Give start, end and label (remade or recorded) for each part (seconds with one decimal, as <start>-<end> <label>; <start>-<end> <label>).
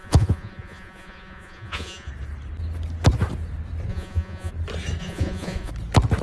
0.0-2.1 remade; 2.1-3.9 recorded; 3.9-4.5 remade; 4.5-5.0 recorded; 5.0-5.7 remade; 5.7-6.2 recorded